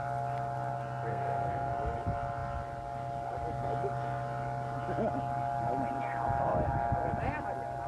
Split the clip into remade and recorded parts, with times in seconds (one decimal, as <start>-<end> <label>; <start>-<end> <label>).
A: 0.0-1.1 recorded; 1.1-1.7 remade; 1.7-7.9 recorded